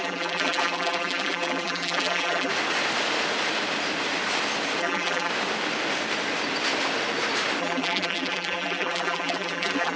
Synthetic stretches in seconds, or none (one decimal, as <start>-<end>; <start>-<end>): 0.0-2.5; 4.8-5.3; 7.6-10.0